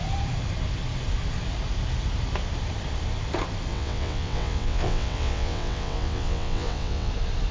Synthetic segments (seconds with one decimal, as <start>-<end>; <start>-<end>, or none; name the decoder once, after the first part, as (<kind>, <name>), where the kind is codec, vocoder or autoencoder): 3.7-7.1 (vocoder, WaveNeXt)